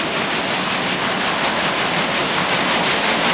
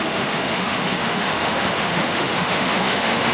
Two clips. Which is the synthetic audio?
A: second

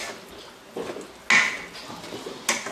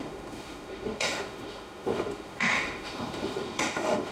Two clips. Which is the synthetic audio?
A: second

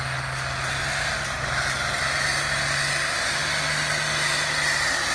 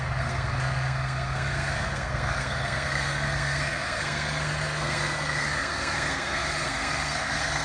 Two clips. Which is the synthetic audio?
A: second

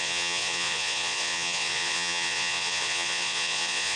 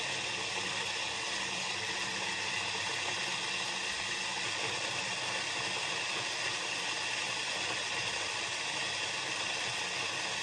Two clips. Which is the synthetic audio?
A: first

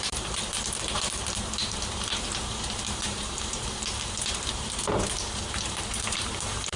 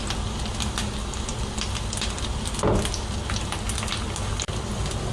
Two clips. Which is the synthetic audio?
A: first